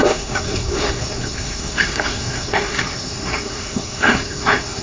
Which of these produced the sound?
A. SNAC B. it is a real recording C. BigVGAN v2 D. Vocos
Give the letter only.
A